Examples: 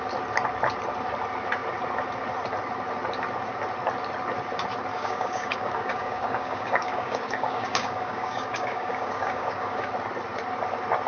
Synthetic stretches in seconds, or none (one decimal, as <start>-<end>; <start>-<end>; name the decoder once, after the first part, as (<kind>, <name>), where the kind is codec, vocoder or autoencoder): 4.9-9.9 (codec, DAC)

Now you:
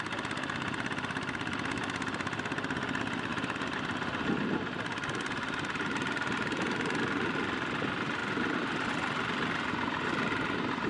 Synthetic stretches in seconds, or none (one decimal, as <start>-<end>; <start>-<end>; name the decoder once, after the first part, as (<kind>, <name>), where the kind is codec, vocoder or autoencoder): 3.3-7.0 (vocoder, BigVGAN v2); 8.2-8.9

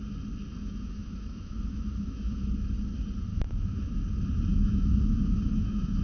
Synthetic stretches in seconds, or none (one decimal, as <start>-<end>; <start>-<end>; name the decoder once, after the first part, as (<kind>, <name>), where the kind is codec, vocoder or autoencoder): 0.5-2.5 (autoencoder, DAC-VAE); 3.3-3.9; 4.5-6.0

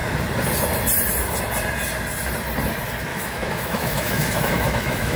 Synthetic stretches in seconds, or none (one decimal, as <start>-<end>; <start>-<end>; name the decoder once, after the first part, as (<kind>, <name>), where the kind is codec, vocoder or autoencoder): 3.1-5.2 (autoencoder, DAC-VAE)

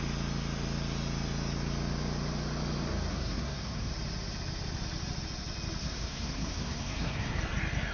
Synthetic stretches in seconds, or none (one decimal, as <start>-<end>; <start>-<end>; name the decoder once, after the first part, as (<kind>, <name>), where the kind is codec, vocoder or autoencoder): 3.1-3.9 (codec, SNAC); 5.8-7.4